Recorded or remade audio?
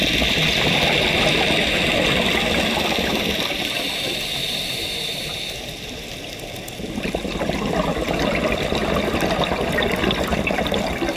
recorded